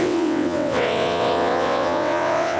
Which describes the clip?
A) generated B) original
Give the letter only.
A